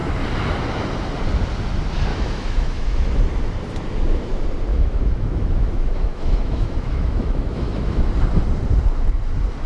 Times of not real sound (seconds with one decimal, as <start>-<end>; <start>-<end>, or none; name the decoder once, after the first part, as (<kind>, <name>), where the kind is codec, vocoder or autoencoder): 2.1-3.2 (autoencoder, DAC-VAE); 4.7-8.1